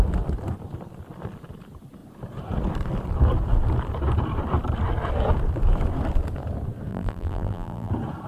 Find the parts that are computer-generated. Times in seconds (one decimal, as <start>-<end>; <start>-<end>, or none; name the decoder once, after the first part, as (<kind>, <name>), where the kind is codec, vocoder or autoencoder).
6.9-7.9 (vocoder, BigVGAN v2)

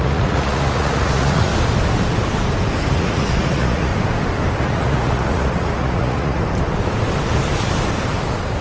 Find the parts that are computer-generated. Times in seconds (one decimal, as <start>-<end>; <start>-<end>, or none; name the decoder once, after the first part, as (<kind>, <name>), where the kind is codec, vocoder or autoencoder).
0.0-1.5 (vocoder, Vocos); 2.9-3.9; 4.6-6.4

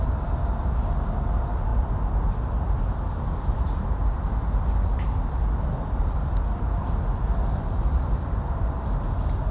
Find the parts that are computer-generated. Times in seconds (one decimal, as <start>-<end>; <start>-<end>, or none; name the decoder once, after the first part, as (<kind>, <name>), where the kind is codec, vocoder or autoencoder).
none